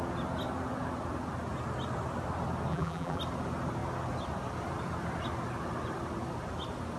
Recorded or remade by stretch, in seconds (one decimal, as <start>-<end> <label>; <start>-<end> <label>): 0.0-2.7 recorded; 2.7-3.2 remade; 3.2-7.0 recorded